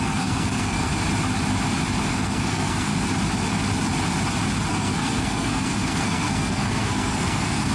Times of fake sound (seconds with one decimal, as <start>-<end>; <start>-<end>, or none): 0.0-0.9; 2.1-2.9; 4.7-7.7